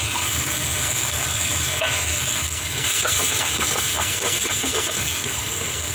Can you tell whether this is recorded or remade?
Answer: remade